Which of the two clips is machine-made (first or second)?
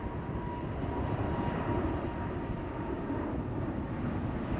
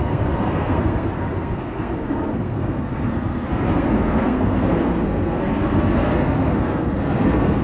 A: second